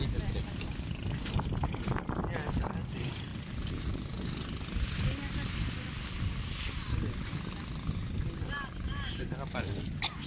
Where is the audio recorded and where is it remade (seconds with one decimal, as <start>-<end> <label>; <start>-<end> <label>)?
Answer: 0.0-3.3 recorded; 3.3-3.9 remade; 3.9-10.3 recorded